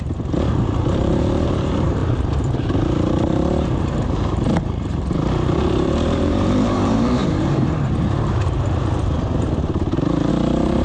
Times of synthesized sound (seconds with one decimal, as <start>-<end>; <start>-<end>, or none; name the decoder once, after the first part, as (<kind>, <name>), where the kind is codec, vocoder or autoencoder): 0.0-10.8 (vocoder, BigVGAN v2)